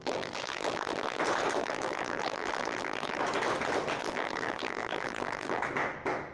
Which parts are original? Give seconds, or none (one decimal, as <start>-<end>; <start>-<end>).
1.2-1.6; 3.2-4.0; 5.6-6.3